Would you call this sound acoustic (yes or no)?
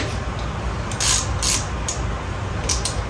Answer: yes